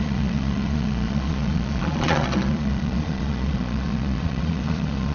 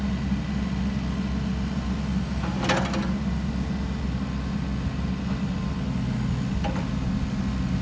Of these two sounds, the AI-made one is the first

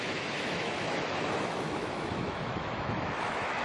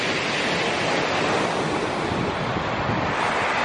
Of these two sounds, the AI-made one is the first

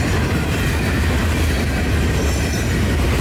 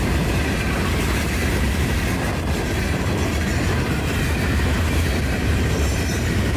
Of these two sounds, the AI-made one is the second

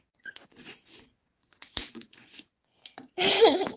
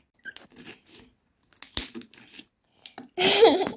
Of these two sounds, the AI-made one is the first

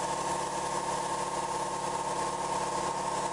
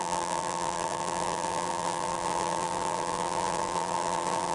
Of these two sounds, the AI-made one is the second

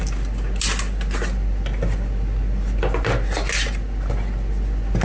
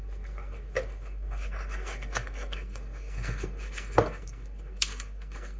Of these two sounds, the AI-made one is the second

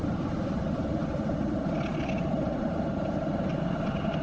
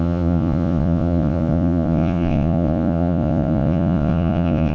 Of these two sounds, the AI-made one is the second